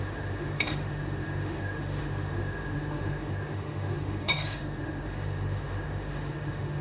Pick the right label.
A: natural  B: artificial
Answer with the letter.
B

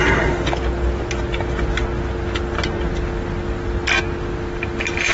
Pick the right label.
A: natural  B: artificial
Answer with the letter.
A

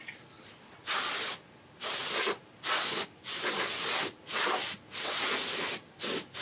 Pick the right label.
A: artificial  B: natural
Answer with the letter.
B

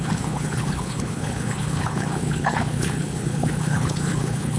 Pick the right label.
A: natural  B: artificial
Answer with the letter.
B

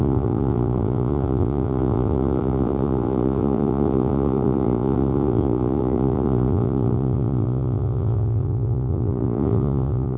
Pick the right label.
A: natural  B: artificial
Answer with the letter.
B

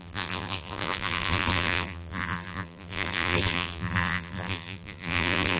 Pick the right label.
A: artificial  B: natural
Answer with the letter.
A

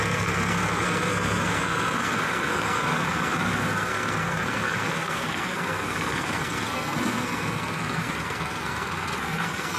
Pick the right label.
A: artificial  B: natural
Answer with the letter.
A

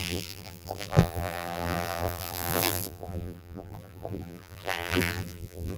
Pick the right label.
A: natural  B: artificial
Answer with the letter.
B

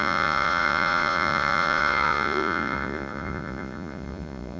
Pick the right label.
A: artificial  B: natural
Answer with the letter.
A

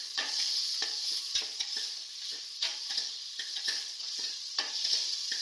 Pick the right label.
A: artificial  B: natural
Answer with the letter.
A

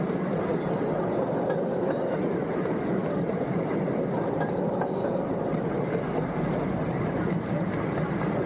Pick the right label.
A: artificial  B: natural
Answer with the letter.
B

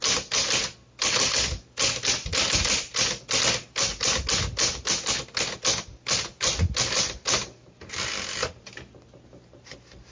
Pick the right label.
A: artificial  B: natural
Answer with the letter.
B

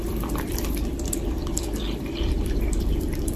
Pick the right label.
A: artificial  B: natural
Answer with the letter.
A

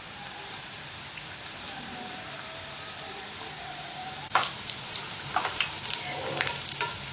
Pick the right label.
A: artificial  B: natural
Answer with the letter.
A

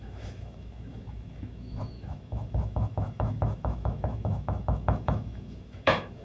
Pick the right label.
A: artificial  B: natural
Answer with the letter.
A